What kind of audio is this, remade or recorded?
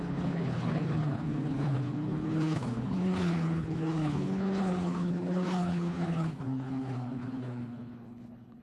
remade